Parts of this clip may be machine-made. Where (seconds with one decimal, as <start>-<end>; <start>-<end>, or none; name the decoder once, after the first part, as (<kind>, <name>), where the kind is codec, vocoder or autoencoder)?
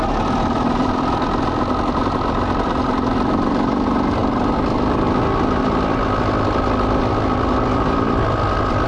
4.2-5.6 (vocoder, BigVGAN v2)